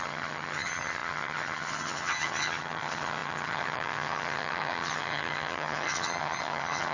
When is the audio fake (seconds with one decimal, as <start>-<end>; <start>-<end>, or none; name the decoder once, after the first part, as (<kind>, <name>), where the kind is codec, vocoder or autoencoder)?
0.0-6.9 (vocoder, HiFi-GAN)

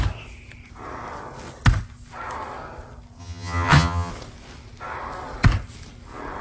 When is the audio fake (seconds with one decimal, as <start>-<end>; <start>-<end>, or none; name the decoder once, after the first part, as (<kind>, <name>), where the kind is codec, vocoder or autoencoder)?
3.2-4.1 (vocoder, HiFi-GAN)

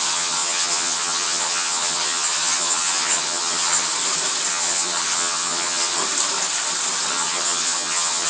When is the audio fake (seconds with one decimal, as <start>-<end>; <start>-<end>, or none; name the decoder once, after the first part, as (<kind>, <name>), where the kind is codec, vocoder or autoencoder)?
0.0-3.9 (vocoder, HiFi-GAN); 4.5-6.0; 7.1-8.3